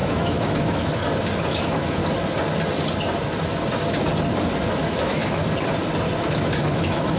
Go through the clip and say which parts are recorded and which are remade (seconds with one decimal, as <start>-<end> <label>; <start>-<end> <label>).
0.0-1.0 remade; 1.0-1.5 recorded; 1.5-2.0 remade; 2.0-4.7 recorded; 4.7-5.4 remade; 5.4-6.3 recorded; 6.3-7.2 remade